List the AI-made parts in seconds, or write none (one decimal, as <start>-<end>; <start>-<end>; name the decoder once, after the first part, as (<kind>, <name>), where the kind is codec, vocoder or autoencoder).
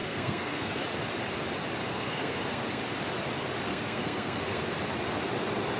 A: 0.0-0.8 (codec, SNAC); 1.9-2.8; 3.7-4.6